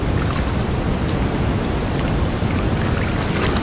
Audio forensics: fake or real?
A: real